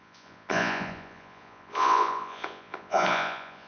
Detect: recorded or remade remade